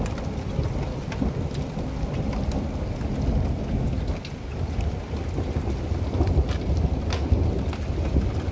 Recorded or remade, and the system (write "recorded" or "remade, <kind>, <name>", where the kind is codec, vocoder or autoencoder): recorded